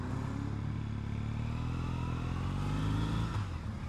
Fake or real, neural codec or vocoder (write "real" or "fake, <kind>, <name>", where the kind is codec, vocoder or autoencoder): real